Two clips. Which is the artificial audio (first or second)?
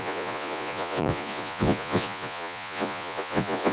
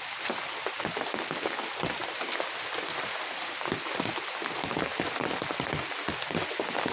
first